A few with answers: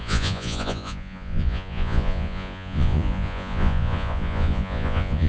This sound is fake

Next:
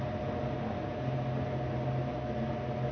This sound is real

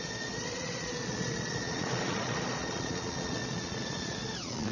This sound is fake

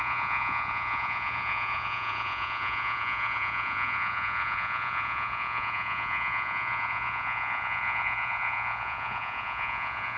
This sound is fake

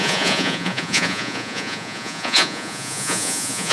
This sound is fake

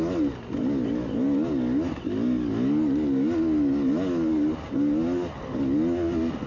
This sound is real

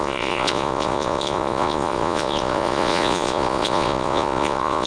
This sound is fake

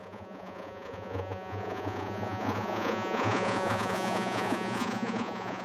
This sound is fake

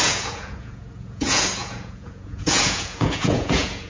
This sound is fake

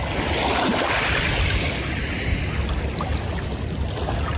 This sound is real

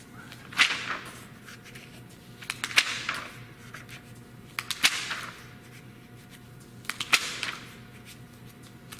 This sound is real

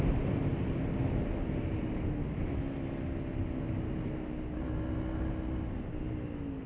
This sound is real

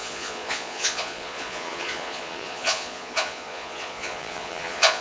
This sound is fake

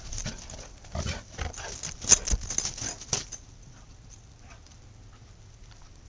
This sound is real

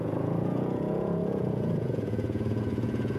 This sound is fake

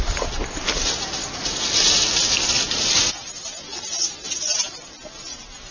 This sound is real